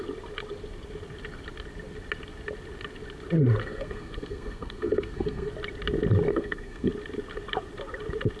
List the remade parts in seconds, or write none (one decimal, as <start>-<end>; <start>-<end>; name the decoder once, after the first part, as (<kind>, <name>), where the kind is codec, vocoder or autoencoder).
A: 3.6-5.5 (codec, SNAC); 6.3-6.9